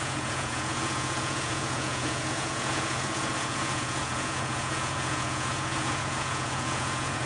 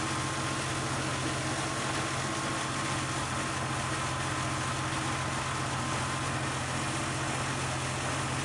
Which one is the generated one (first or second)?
first